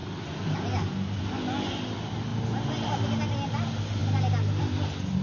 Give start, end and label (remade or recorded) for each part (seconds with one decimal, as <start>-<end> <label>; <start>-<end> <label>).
0.0-5.2 recorded